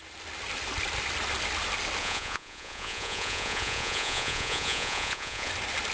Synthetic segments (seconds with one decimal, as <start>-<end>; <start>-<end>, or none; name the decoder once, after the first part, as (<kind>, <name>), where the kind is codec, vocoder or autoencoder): 2.0-5.5 (vocoder, Vocos)